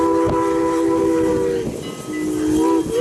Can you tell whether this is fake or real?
real